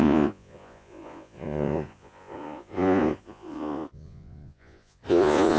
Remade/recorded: remade